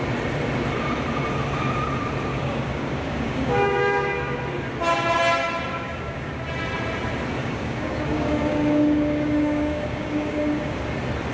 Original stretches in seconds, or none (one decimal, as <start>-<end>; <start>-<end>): 0.0-2.3; 4.4-5.7; 6.4-7.4; 10.8-11.3